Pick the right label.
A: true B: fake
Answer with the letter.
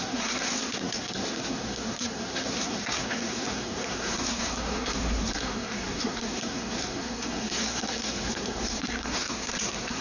B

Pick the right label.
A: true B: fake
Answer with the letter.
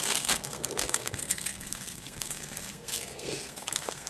B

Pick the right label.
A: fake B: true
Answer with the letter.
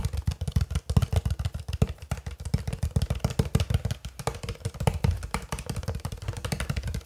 B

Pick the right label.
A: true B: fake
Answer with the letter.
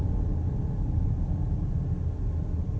A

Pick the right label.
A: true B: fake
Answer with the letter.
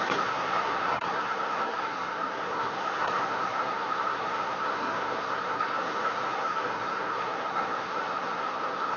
B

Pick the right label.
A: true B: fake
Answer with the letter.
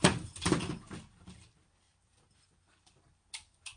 A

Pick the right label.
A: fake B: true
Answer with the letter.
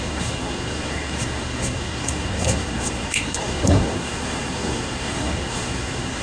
A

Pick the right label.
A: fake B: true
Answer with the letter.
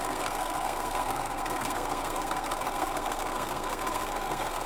A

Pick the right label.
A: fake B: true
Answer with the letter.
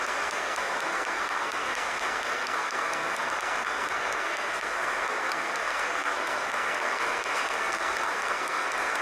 A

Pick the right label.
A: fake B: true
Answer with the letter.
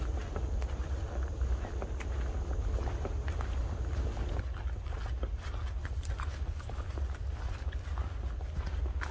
B